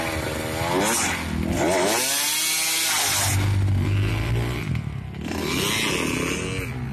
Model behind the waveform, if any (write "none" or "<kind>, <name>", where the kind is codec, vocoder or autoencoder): none